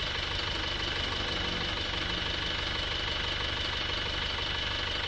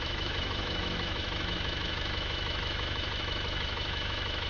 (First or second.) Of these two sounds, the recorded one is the first